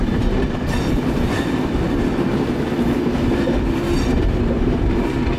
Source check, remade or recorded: recorded